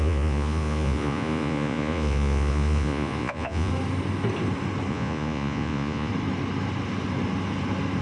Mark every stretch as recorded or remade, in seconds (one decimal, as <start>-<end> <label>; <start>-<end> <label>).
0.0-3.7 remade; 3.7-4.9 recorded; 4.9-6.1 remade; 6.1-8.0 recorded